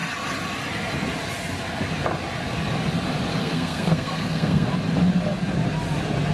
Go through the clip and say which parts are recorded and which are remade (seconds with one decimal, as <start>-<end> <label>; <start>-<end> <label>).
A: 0.0-3.4 recorded; 3.4-4.7 remade; 4.7-6.3 recorded